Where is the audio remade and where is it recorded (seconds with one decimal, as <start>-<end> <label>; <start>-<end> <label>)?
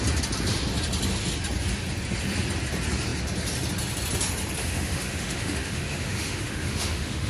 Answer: 0.0-4.6 recorded; 4.6-7.3 remade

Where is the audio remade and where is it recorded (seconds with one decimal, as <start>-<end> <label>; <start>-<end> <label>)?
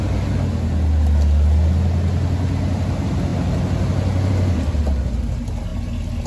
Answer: 0.0-6.3 recorded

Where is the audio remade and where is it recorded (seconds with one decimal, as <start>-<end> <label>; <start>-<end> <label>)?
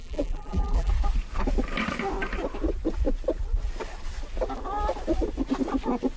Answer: 0.0-0.9 remade; 0.9-6.2 recorded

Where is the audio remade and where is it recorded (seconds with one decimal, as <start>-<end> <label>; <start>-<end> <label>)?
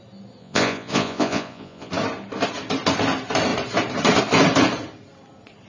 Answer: 0.0-0.4 recorded; 0.4-1.9 remade; 1.9-5.7 recorded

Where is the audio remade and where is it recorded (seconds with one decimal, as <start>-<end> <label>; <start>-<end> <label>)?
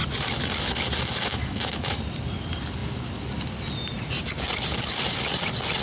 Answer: 0.0-1.3 recorded; 1.3-2.0 remade; 2.0-5.8 recorded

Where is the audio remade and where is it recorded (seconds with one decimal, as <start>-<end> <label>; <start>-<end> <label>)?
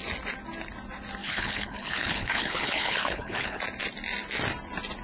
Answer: 0.0-1.2 recorded; 1.2-3.6 remade; 3.6-5.0 recorded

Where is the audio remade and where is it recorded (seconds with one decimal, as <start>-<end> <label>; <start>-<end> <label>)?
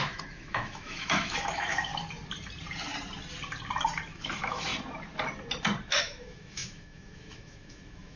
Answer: 0.0-1.9 remade; 1.9-4.1 recorded; 4.1-4.7 remade; 4.7-6.0 recorded; 6.0-8.2 remade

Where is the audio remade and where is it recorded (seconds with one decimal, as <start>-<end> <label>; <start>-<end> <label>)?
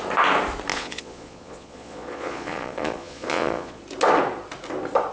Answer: 0.0-0.7 recorded; 0.7-3.8 remade; 3.8-5.1 recorded